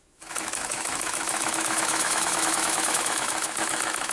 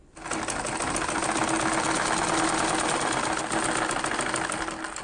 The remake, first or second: first